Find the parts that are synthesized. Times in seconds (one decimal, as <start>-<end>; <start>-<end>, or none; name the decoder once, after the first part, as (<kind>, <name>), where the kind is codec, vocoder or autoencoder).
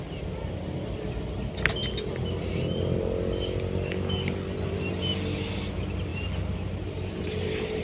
none